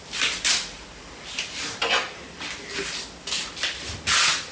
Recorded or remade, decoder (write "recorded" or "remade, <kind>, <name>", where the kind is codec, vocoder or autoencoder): recorded